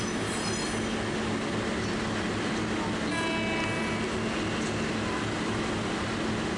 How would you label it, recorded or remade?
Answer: recorded